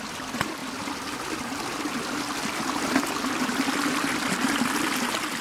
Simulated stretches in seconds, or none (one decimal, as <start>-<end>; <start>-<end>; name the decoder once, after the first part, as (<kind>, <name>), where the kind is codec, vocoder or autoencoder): none